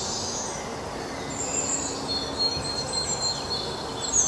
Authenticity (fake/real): real